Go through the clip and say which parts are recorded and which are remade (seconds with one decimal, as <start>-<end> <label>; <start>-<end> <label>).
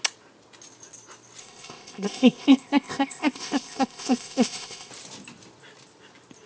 0.0-1.4 recorded; 1.4-4.9 remade; 4.9-6.5 recorded